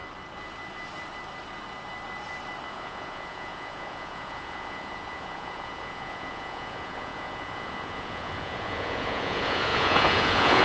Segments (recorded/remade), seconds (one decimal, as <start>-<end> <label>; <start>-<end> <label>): 0.0-2.7 recorded; 2.7-10.6 remade